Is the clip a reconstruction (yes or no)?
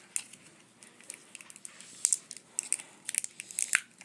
no